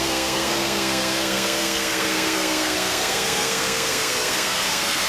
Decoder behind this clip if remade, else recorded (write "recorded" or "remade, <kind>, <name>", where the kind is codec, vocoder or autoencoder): remade, codec, SNAC